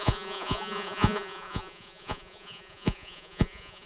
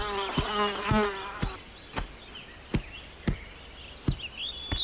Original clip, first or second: second